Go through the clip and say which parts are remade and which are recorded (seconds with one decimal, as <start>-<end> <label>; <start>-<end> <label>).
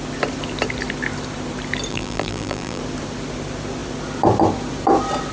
0.0-1.9 recorded; 1.9-2.8 remade; 2.8-5.3 recorded